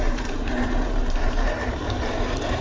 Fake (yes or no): yes